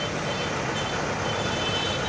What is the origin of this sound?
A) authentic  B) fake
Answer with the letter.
A